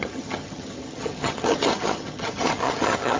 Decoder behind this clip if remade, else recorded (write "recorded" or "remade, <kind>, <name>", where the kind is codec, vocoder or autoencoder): remade, vocoder, HiFi-GAN